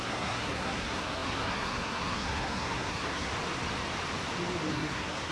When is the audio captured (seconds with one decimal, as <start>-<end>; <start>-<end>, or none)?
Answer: 3.3-4.7